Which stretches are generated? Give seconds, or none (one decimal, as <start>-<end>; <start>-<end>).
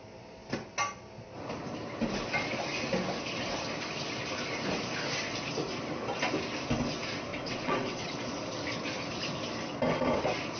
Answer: 7.3-8.1